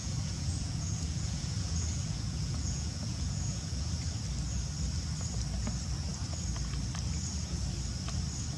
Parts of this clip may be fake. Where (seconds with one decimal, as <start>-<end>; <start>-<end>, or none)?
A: 0.0-3.9